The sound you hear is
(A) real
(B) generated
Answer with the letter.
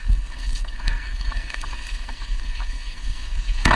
B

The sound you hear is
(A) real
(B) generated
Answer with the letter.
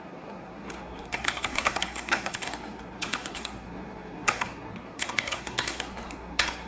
B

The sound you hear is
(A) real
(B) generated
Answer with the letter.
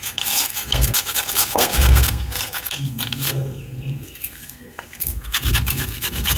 B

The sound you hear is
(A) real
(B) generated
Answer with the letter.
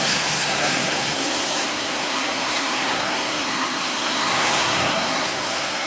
B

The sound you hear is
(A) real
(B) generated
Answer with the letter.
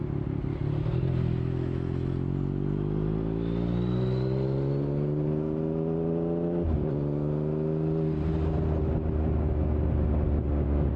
A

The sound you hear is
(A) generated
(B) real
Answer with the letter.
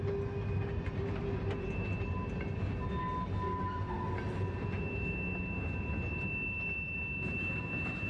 B